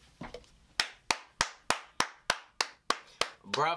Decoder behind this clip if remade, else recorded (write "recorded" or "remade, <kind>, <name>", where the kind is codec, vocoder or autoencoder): recorded